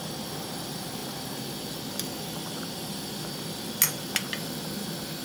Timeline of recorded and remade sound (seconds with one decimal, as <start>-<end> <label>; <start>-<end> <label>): 0.0-5.2 recorded